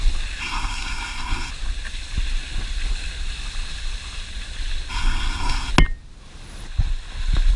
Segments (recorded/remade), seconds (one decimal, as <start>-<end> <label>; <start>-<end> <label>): 0.0-0.4 recorded; 0.4-1.5 remade; 1.5-4.9 recorded; 4.9-5.7 remade; 5.7-7.6 recorded